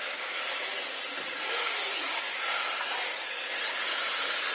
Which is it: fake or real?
real